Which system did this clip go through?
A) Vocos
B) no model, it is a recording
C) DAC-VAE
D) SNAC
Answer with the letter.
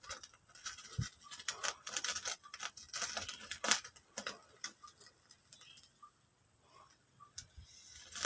B